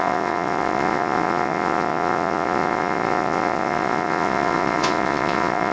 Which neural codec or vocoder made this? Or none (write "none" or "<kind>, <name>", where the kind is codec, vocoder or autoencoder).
vocoder, Vocos